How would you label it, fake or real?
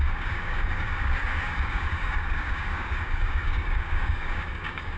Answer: fake